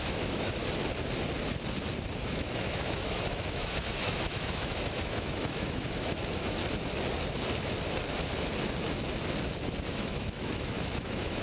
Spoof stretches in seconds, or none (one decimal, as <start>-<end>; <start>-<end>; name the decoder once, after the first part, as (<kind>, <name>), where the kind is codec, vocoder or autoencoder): 0.0-0.6 (autoencoder, DAC-VAE); 2.2-6.6; 9.9-11.4